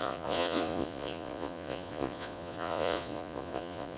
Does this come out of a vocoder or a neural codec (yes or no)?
yes